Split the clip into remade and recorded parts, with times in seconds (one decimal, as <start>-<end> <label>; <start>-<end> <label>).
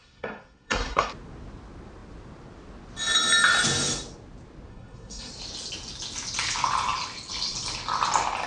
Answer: 0.0-1.1 remade; 1.1-4.7 recorded; 4.7-5.3 remade; 5.3-8.5 recorded